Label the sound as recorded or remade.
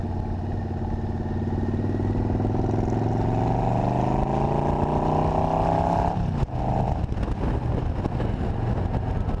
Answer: recorded